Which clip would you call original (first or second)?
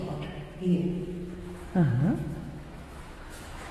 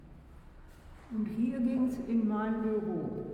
second